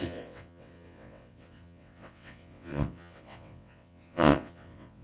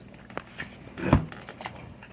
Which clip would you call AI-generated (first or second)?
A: first